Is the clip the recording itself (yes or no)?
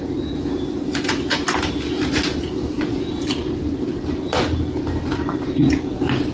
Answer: yes